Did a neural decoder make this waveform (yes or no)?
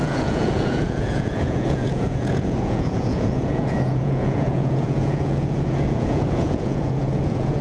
yes